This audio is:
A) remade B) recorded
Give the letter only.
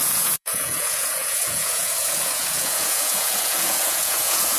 A